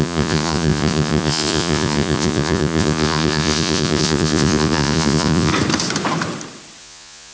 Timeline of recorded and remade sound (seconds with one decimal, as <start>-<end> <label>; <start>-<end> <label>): 0.0-5.5 remade; 5.5-6.8 recorded; 6.8-7.3 remade